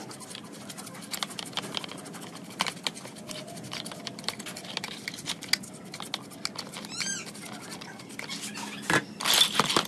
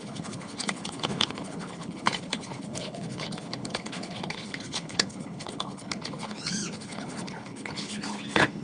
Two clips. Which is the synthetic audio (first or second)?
second